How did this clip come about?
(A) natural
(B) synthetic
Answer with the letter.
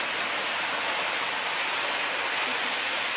A